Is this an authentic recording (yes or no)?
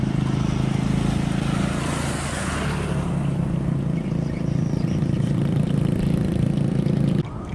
yes